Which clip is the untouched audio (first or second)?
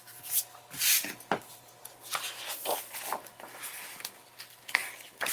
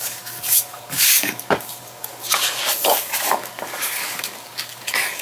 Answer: first